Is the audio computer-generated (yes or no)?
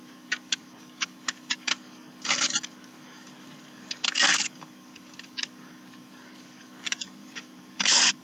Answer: yes